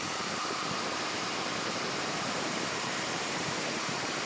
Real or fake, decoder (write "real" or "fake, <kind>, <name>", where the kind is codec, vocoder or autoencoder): fake, vocoder, BigVGAN v2